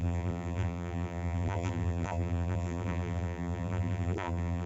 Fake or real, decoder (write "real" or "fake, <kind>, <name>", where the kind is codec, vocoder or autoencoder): fake, vocoder, BigVGAN v2